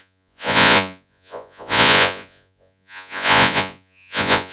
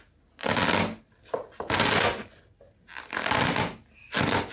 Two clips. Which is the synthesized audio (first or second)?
first